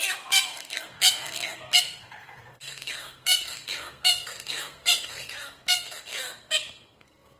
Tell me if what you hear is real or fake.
fake